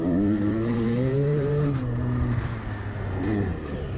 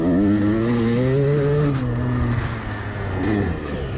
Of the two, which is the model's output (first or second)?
first